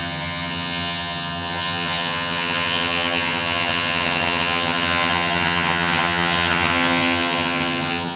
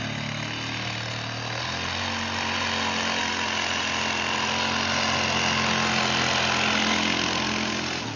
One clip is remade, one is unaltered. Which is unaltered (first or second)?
second